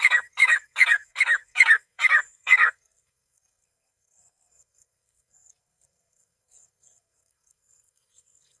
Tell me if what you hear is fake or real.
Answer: fake